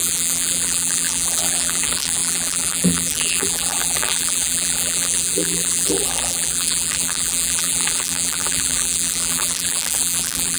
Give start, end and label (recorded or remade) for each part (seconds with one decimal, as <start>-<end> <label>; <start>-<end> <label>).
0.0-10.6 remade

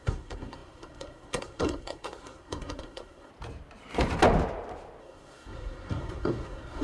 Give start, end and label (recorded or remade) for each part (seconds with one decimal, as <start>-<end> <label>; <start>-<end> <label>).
0.0-3.3 remade; 3.3-5.0 recorded; 5.0-6.8 remade

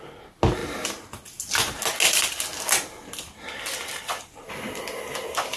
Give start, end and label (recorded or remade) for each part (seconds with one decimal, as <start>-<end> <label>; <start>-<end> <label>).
0.0-5.6 recorded

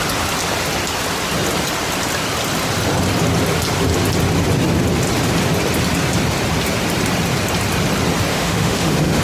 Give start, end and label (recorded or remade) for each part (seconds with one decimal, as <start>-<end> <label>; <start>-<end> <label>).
0.0-8.3 recorded; 8.3-9.2 remade

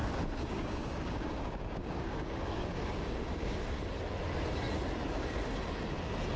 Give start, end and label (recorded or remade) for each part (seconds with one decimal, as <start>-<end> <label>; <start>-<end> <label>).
0.0-3.8 remade; 3.8-6.4 recorded

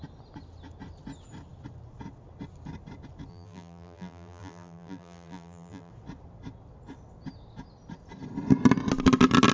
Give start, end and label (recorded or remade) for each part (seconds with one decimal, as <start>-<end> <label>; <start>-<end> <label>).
0.0-3.3 recorded; 3.3-5.9 remade; 5.9-9.5 recorded